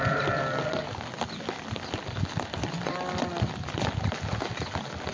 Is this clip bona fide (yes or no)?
yes